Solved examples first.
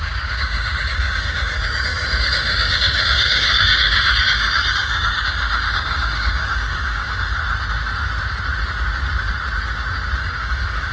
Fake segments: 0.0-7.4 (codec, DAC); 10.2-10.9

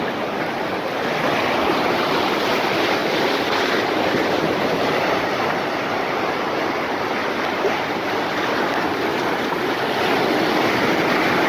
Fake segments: 3.0-7.0 (vocoder, BigVGAN v2)

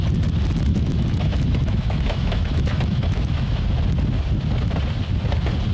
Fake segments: 0.7-3.6 (autoencoder, DAC-VAE)

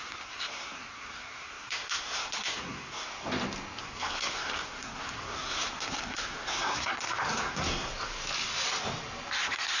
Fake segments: 0.0-3.1 (codec, SNAC); 3.8-7.9; 9.4-9.8

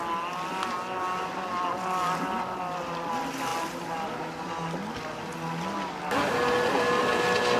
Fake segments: none

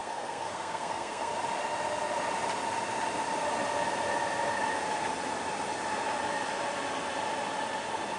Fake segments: 0.0-1.3 (codec, SNAC)